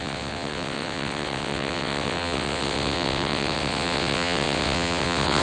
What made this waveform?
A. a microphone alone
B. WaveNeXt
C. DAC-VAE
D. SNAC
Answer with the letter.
B